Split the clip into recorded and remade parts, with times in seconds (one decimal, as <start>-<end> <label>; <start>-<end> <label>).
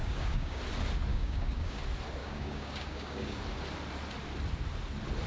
0.0-0.6 remade; 0.6-1.1 recorded; 1.1-1.8 remade; 1.8-2.2 recorded; 2.2-3.4 remade; 3.4-5.3 recorded